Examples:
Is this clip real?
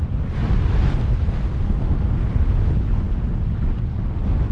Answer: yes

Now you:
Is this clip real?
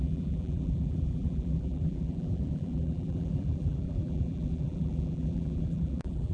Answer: no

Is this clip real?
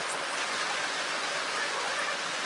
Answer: no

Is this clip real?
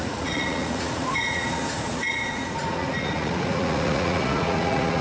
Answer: no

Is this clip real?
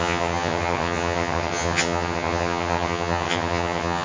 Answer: no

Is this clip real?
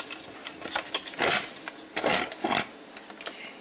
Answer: yes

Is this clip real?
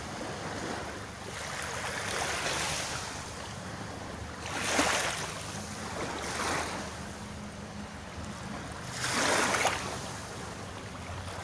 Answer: yes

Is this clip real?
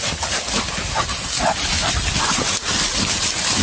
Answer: yes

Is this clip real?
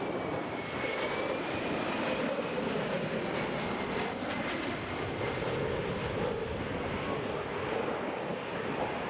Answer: yes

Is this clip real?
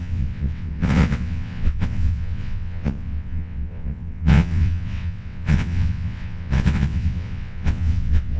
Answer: no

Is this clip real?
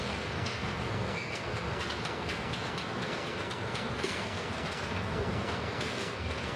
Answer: no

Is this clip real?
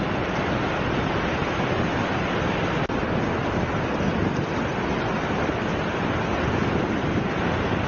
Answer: yes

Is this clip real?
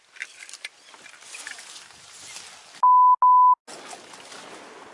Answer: yes